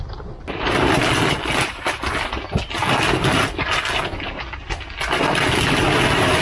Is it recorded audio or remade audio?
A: recorded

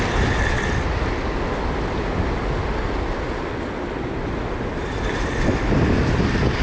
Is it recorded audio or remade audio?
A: recorded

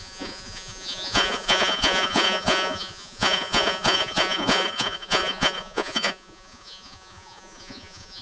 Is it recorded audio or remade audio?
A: remade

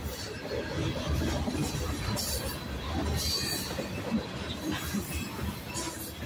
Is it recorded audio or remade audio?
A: recorded